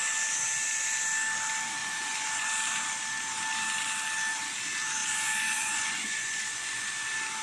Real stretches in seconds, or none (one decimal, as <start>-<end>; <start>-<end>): 0.0-1.8; 2.5-5.0; 6.9-7.4